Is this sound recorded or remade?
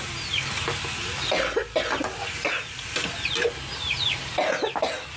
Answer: recorded